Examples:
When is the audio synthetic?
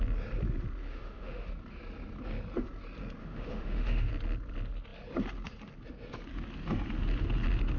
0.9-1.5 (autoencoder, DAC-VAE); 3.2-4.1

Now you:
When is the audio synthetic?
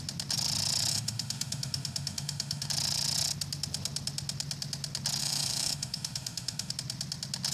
0.9-2.7 (autoencoder, DAC-VAE); 5.2-6.7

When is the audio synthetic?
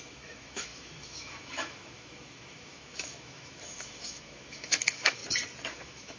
0.0-5.2 (autoencoder, DAC-VAE); 5.7-6.2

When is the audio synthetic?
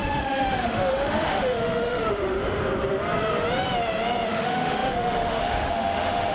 0.0-2.6 (autoencoder, DAC-VAE); 4.3-6.3